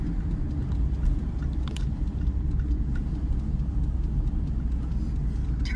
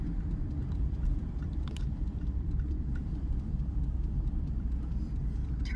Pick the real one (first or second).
first